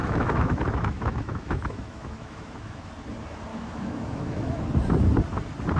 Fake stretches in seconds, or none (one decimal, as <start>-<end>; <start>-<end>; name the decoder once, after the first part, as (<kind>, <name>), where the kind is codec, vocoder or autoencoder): 0.0-2.9 (autoencoder, DAC-VAE); 3.5-4.7